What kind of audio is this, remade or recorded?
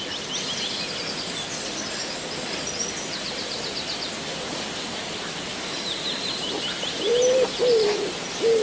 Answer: recorded